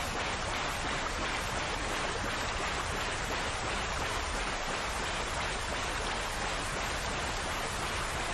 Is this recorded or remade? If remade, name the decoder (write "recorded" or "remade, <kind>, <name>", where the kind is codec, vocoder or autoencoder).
recorded